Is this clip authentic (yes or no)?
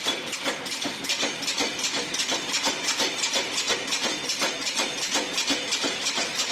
yes